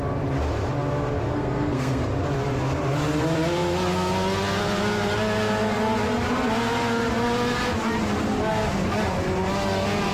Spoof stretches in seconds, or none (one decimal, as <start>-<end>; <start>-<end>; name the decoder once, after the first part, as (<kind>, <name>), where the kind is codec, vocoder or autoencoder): 1.3-2.0 (codec, SNAC)